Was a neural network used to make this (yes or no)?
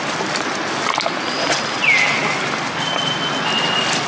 no